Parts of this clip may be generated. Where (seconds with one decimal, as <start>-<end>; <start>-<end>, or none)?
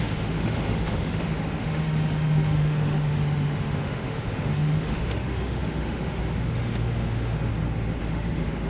0.0-7.5; 8.0-8.7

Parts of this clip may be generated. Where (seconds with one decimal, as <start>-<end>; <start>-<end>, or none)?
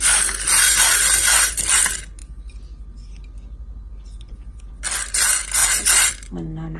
5.6-6.1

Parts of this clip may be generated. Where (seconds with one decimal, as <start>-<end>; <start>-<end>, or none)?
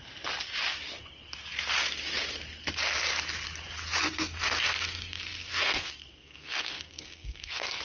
4.1-7.8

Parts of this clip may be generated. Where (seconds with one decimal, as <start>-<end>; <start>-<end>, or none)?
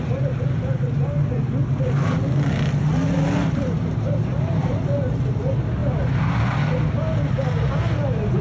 none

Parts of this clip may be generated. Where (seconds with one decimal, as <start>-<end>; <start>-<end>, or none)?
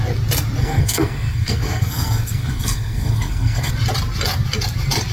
0.6-3.7